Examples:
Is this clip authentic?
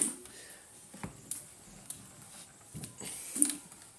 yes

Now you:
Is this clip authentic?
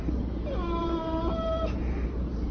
no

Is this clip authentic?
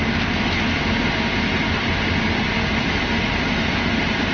yes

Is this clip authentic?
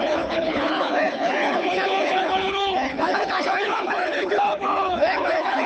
no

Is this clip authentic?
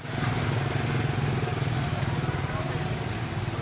yes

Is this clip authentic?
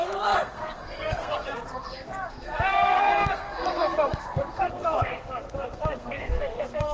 no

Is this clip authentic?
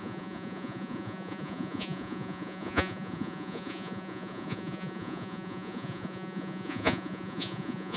no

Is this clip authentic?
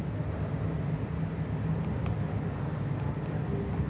yes